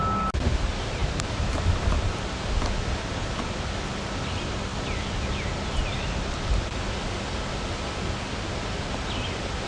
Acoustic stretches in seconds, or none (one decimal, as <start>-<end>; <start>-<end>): 0.0-9.7